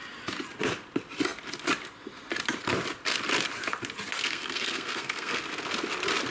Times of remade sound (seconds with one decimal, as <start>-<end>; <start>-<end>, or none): 4.2-5.5